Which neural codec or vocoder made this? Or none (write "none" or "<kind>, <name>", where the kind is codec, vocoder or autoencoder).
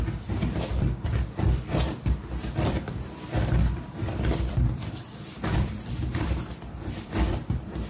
vocoder, BigVGAN v2